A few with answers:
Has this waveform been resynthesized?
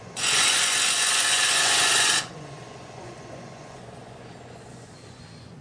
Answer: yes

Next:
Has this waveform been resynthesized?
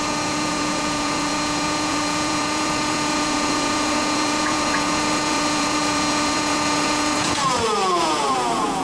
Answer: yes